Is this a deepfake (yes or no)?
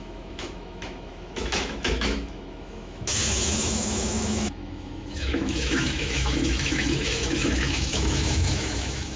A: yes